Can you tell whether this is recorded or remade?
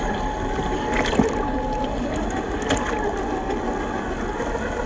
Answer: recorded